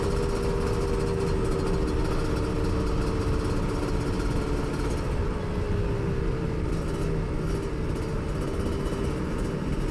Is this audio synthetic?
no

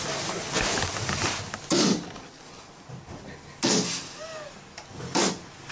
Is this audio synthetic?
no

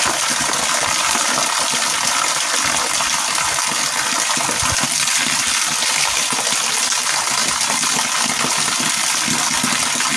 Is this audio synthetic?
no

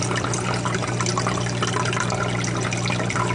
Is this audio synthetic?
no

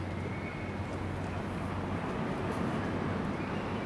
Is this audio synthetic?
no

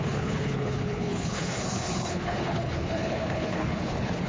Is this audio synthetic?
yes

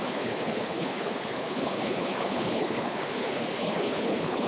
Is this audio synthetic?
yes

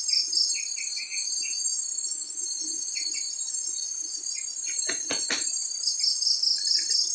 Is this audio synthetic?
no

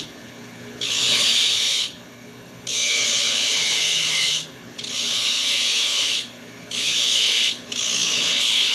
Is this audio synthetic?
yes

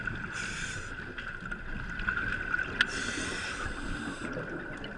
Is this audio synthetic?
no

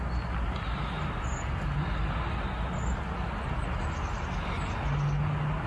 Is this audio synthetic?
no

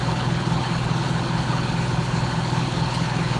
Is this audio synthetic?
yes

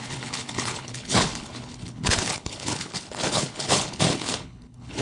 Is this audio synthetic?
yes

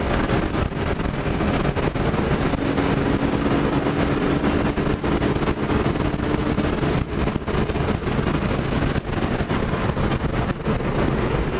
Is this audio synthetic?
no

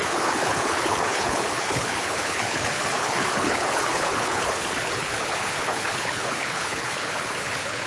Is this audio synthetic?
yes